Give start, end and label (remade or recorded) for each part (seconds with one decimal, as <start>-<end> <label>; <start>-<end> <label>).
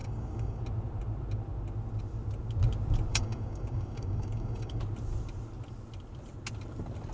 0.0-0.6 remade; 0.6-3.1 recorded; 3.1-4.8 remade; 4.8-7.1 recorded